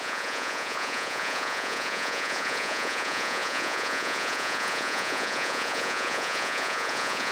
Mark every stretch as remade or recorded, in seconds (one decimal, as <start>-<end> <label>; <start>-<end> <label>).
0.0-7.3 remade